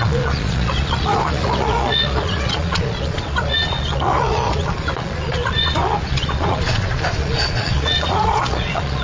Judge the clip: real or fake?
fake